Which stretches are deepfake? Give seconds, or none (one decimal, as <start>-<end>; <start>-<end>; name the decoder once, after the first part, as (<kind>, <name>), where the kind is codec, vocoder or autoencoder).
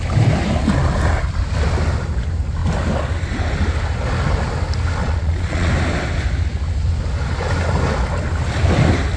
5.0-5.7 (vocoder, Vocos)